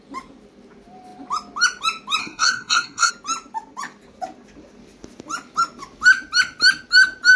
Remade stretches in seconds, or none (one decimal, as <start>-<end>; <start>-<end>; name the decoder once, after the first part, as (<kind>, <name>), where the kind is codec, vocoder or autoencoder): 2.2-3.1 (codec, SNAC)